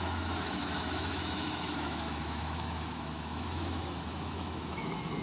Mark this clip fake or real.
fake